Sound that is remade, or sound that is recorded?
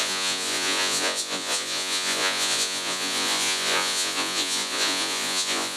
remade